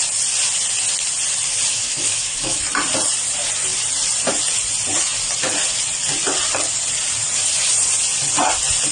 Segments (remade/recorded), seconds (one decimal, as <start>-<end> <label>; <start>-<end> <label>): 0.0-1.7 recorded; 1.7-2.7 remade; 2.7-8.9 recorded